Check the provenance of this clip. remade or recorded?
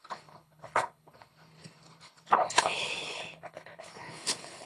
remade